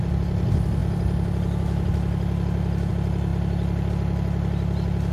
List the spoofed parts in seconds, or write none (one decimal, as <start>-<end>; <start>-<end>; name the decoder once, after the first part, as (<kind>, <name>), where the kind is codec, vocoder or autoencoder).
none